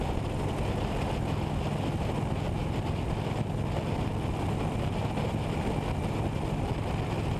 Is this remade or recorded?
recorded